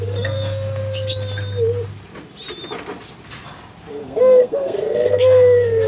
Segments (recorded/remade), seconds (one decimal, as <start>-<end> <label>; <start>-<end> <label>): 0.0-0.8 remade; 0.8-3.9 recorded; 3.9-5.9 remade